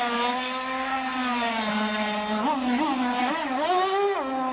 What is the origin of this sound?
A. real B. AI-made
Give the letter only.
A